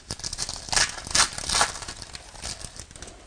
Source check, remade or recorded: recorded